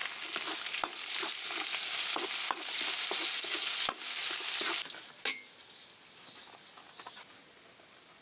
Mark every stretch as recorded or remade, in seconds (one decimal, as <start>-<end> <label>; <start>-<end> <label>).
0.0-8.2 recorded

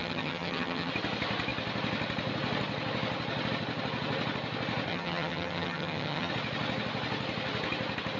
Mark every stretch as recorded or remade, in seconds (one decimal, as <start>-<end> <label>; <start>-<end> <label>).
0.0-0.9 remade; 0.9-4.9 recorded; 4.9-6.3 remade; 6.3-8.2 recorded

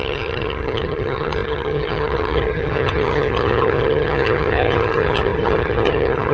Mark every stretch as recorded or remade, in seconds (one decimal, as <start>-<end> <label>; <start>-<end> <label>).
0.0-6.3 remade

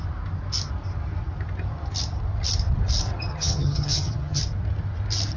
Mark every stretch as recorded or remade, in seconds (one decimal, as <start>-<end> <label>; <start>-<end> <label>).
0.0-3.3 recorded; 3.3-4.4 remade; 4.4-5.4 recorded